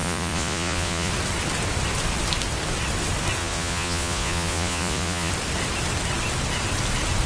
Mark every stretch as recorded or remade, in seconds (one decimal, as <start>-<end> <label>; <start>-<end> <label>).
0.0-1.1 remade; 1.1-3.4 recorded; 3.4-5.3 remade; 5.3-7.3 recorded